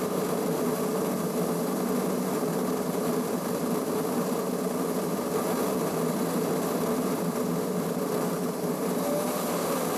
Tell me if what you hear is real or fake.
real